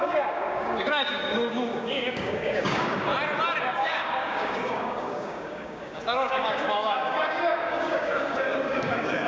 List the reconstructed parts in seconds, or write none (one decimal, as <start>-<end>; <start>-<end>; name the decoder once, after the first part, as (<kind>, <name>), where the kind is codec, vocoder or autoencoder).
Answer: 0.0-3.1 (codec, DAC); 3.6-9.3